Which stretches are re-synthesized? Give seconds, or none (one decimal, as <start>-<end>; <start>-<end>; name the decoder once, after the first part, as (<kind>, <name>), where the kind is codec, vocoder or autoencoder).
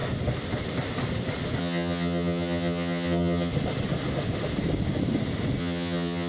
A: 1.6-3.5 (vocoder, HiFi-GAN); 5.6-6.3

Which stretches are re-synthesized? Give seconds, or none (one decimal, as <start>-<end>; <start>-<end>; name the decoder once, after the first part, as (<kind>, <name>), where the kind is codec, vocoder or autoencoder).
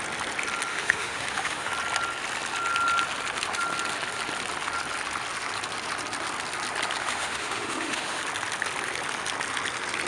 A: 0.7-1.7 (autoencoder, DAC-VAE); 7.0-8.2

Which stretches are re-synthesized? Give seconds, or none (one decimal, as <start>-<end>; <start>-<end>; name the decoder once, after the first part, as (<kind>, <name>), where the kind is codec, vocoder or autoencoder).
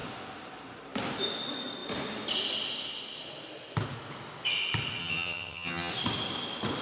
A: 5.0-5.9 (vocoder, HiFi-GAN)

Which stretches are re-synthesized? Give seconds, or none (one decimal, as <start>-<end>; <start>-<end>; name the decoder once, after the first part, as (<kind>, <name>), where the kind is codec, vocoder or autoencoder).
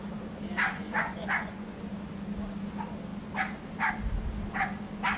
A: 0.7-1.8 (vocoder, Vocos)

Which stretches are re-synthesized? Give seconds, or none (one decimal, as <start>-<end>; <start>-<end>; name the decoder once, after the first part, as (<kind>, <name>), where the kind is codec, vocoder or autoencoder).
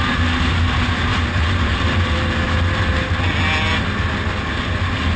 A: 0.0-1.1 (vocoder, BigVGAN v2); 4.2-5.2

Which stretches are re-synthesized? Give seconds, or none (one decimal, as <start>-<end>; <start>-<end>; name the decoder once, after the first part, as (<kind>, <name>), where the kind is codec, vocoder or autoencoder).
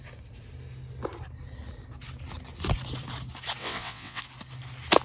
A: 3.6-4.2 (vocoder, WaveNeXt)